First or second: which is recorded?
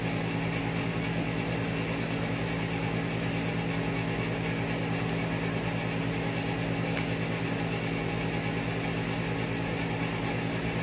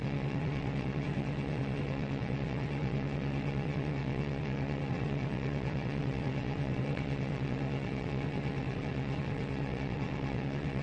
first